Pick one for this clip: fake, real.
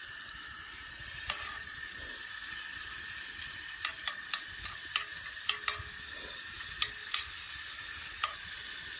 real